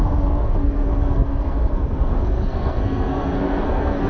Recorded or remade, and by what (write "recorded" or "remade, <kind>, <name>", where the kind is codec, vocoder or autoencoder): remade, codec, SNAC